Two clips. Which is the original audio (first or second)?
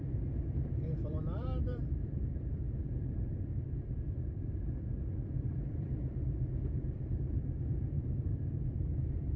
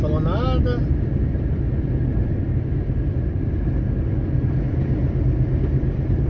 second